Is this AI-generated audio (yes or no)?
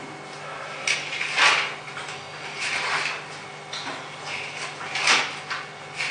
no